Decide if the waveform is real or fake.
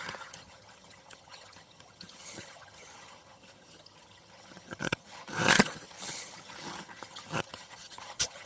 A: fake